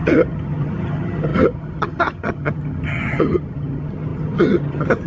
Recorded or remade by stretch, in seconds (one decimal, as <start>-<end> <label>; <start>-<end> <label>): 0.0-5.1 remade